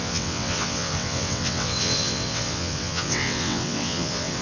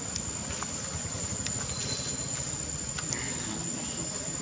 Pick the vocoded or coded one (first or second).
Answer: first